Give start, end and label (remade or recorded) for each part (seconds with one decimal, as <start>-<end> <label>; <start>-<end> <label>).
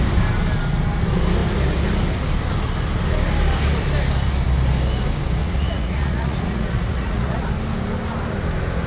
0.0-5.4 recorded; 5.4-7.5 remade; 7.5-8.9 recorded